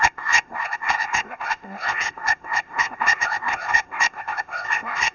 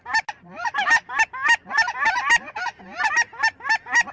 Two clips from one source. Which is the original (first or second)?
second